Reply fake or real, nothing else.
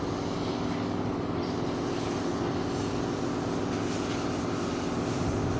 real